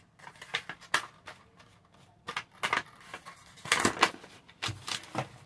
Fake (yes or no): no